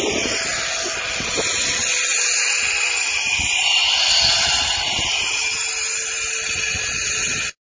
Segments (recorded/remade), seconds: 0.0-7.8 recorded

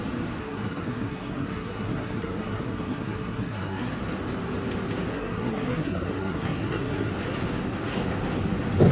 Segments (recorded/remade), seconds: 0.0-0.4 recorded; 0.4-3.9 remade; 3.9-5.1 recorded; 5.1-7.1 remade; 7.1-8.9 recorded

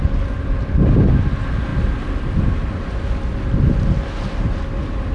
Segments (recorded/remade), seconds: 0.0-5.1 recorded

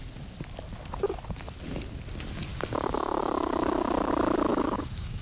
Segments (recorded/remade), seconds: 0.0-2.5 recorded; 2.5-4.1 remade; 4.1-4.5 recorded; 4.5-5.2 remade

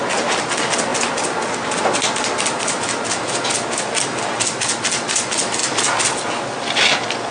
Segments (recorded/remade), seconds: 0.0-7.3 recorded

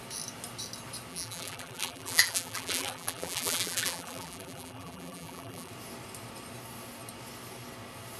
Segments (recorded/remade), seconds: 0.0-1.1 recorded; 1.1-5.7 remade; 5.7-8.2 recorded

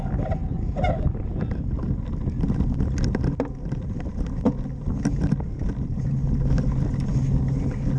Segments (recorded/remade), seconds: 0.0-8.0 recorded

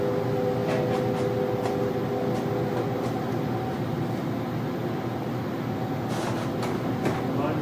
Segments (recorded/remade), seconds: 0.0-7.6 recorded